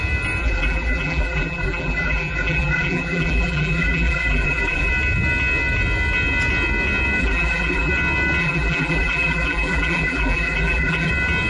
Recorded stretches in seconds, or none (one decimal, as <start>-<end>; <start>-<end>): 0.0-0.4; 4.9-7.2; 7.9-8.4; 11.1-11.5